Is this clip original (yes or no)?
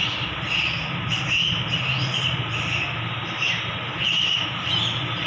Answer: yes